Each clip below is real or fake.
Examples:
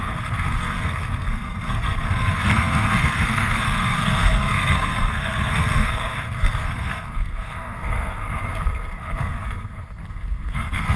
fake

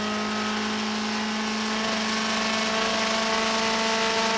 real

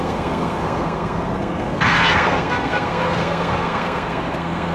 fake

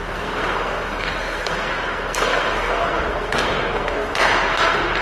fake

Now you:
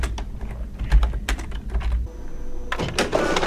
real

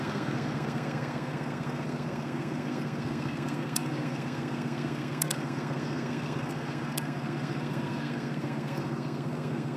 fake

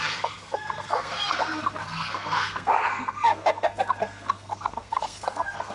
fake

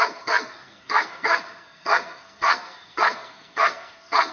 fake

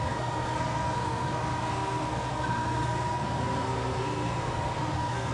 fake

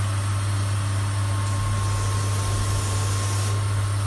real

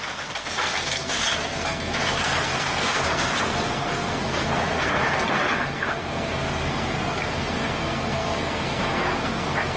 fake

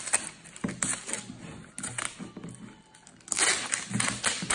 real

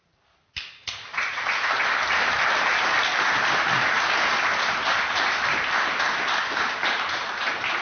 real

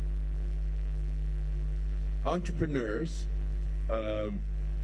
fake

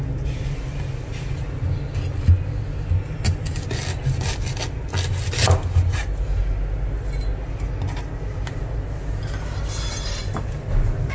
real